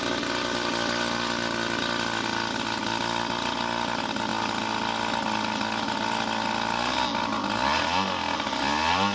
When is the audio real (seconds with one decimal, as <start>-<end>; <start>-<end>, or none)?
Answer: 0.0-9.1